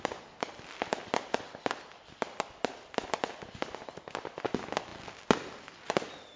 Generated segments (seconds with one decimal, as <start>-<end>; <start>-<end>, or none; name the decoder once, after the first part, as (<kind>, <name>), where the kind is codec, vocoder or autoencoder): none